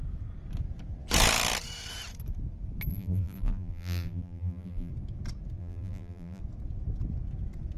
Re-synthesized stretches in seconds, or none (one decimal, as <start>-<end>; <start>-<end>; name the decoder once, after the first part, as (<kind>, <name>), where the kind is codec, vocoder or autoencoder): 2.9-4.9 (vocoder, BigVGAN v2); 5.6-6.4